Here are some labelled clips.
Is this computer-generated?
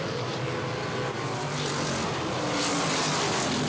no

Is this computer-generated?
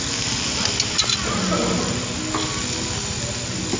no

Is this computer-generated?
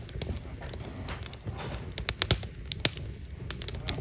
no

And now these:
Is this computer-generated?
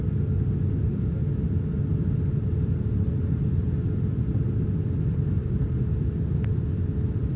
no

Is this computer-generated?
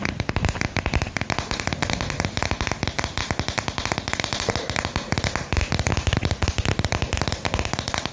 no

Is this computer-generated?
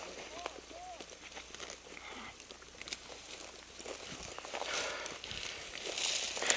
no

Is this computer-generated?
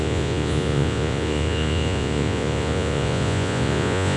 yes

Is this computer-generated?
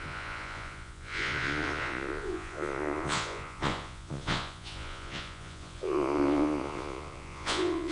yes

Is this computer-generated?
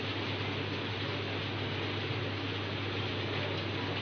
no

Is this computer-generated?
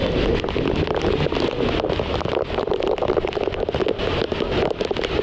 no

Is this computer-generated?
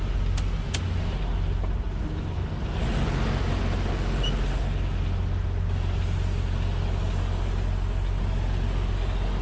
no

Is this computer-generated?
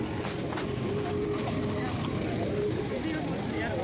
no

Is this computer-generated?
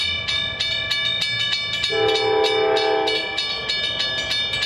no